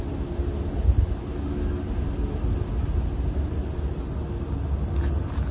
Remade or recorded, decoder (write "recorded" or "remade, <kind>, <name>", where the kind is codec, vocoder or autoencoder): recorded